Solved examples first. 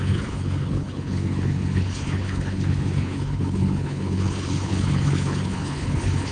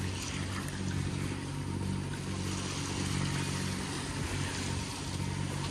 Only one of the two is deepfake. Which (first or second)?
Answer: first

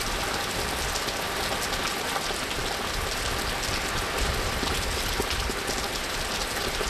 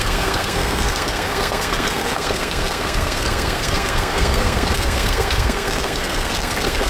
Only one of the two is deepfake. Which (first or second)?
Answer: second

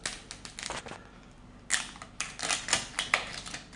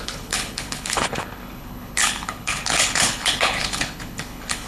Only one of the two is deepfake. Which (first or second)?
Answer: second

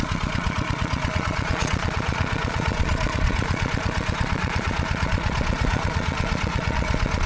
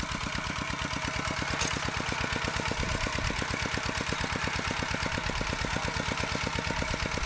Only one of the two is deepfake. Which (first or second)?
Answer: first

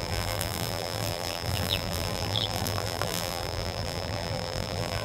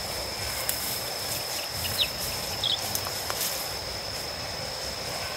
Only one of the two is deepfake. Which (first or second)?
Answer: first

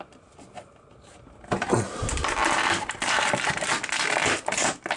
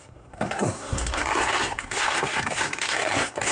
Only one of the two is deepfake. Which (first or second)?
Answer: second